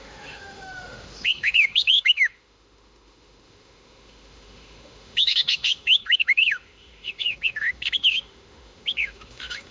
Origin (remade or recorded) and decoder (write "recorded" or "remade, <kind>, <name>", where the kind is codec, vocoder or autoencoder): remade, autoencoder, DAC-VAE